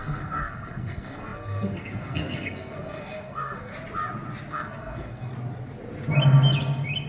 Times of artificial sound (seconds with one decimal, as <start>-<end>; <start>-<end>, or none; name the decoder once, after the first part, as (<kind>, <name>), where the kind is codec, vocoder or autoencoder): 0.0-3.7 (codec, SNAC); 4.5-5.3